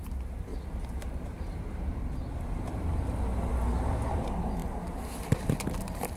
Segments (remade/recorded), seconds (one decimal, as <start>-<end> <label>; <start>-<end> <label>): 0.0-0.5 recorded; 0.5-1.9 remade; 1.9-6.2 recorded